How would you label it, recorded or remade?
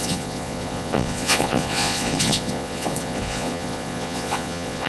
remade